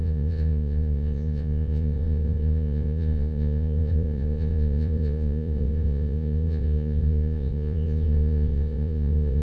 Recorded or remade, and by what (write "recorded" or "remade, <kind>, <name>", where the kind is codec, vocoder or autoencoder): remade, vocoder, Vocos